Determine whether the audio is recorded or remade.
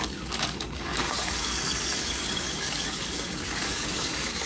remade